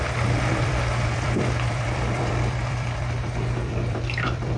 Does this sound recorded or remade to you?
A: remade